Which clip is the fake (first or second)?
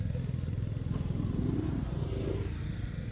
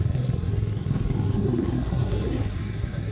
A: second